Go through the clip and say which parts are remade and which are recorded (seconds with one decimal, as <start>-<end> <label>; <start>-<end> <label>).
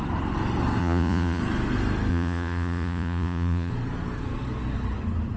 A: 0.0-0.8 recorded; 0.8-1.4 remade; 1.4-2.1 recorded; 2.1-3.7 remade; 3.7-5.4 recorded